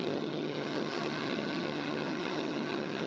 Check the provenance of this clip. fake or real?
fake